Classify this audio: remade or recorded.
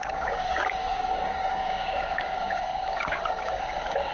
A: remade